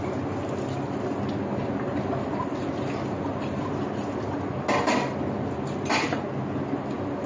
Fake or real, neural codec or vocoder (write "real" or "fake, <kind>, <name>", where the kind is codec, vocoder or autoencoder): real